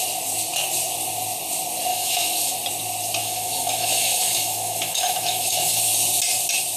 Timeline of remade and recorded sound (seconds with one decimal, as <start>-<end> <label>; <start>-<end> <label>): 0.0-1.9 recorded; 1.9-2.5 remade; 2.5-3.2 recorded; 3.2-5.9 remade; 5.9-6.8 recorded